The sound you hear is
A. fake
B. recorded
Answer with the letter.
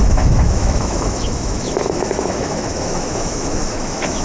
A